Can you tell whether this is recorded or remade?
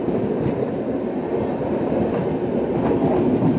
recorded